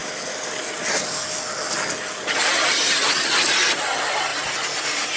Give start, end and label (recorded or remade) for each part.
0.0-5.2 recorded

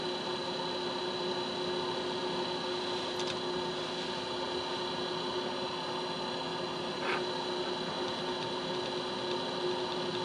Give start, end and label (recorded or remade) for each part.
0.0-10.2 recorded

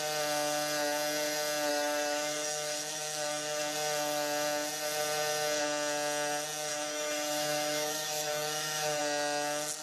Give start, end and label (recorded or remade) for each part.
0.0-1.7 recorded; 1.7-3.6 remade; 3.6-6.7 recorded; 6.7-9.0 remade; 9.0-9.8 recorded

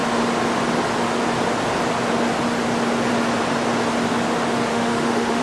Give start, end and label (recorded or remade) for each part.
0.0-4.7 recorded; 4.7-5.4 remade

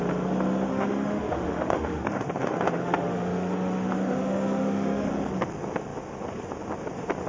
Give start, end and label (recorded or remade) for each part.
0.0-0.7 recorded; 0.7-5.1 remade; 5.1-7.3 recorded

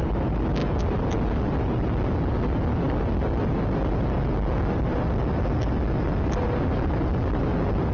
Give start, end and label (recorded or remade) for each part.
0.0-7.9 recorded